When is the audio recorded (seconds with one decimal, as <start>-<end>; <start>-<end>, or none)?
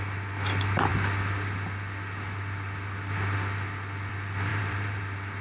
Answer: 0.0-4.5; 5.0-5.4